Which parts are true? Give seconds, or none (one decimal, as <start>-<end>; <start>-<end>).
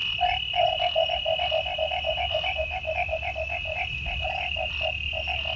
0.0-2.1; 2.8-5.6